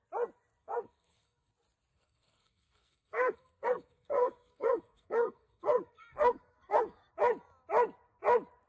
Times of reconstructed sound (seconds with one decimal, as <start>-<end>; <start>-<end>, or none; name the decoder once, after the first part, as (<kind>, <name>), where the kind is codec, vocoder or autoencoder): 0.6-1.5 (codec, SNAC); 1.9-7.1